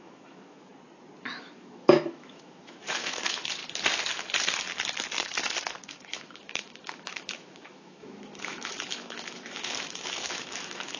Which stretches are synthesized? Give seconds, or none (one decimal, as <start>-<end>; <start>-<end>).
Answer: 0.0-0.7; 1.4-3.6; 5.9-11.0